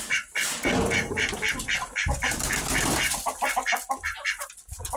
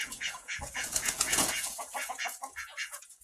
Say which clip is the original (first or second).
first